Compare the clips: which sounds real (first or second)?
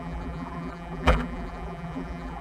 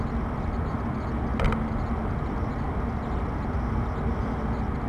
second